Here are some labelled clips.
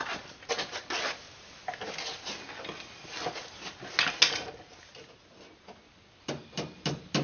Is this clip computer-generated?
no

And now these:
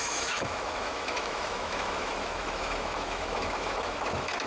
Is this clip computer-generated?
yes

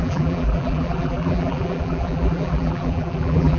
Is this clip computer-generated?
yes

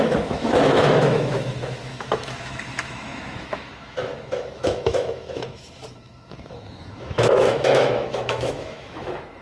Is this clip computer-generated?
yes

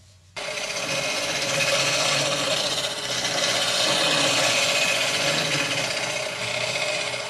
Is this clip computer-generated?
yes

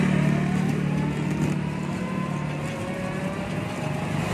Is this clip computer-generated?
no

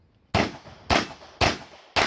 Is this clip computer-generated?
no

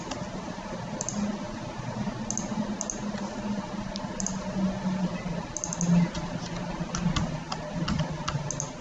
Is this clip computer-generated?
no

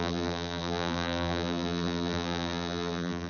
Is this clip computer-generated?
yes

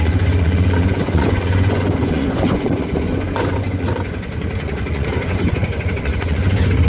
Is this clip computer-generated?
yes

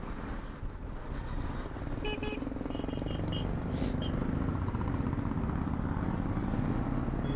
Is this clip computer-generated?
no